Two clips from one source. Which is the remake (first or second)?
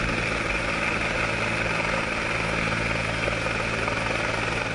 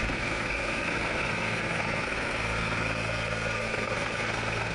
second